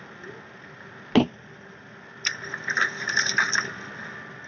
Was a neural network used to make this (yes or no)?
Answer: no